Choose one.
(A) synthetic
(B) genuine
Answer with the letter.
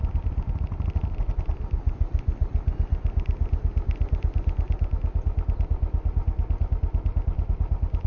B